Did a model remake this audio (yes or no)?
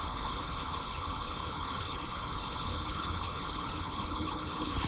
yes